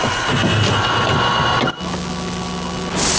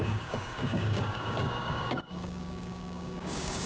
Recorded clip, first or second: first